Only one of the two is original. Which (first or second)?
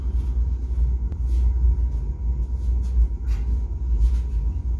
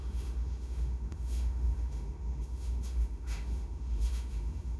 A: first